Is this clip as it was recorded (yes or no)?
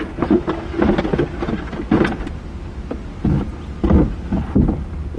yes